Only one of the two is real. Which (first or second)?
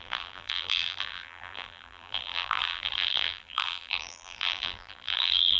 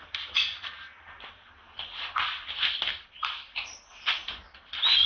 second